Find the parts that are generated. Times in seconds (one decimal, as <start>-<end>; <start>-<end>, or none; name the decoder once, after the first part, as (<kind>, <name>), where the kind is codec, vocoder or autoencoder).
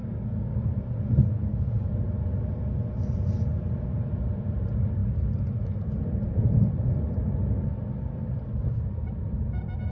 0.0-0.9 (codec, DAC)